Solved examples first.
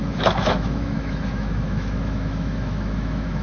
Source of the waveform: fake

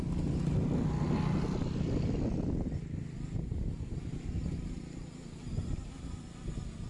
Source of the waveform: real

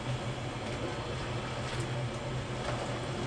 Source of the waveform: real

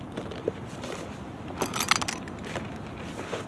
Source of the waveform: real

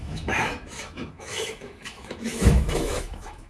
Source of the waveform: fake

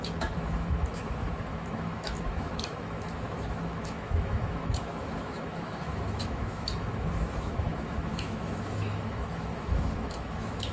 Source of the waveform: fake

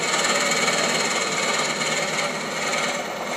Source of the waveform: real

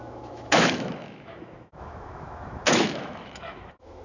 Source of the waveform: fake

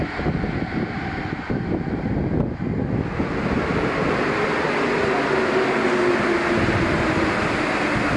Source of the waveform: real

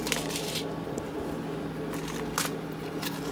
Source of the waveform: real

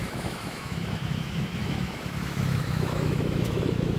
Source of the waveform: fake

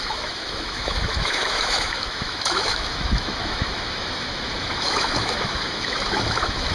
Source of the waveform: fake